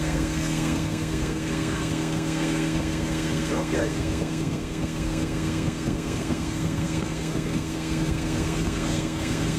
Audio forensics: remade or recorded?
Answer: remade